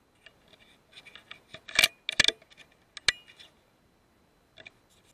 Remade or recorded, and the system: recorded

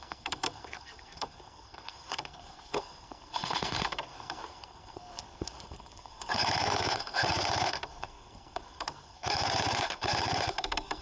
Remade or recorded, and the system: remade, codec, SNAC